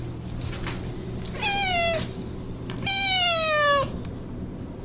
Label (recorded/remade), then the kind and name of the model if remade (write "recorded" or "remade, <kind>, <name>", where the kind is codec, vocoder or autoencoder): recorded